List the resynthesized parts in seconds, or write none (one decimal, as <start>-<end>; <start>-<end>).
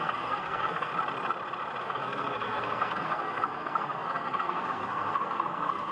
0.0-0.9; 1.8-5.9